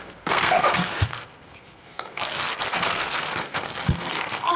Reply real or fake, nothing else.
fake